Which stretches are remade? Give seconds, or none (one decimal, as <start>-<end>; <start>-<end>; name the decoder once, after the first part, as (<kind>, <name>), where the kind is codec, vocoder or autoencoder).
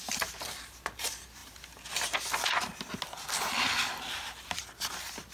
none